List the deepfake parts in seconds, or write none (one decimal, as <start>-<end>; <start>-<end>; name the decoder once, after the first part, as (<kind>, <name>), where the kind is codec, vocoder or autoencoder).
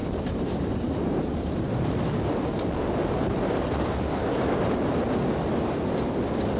0.0-2.0 (vocoder, BigVGAN v2); 3.0-4.8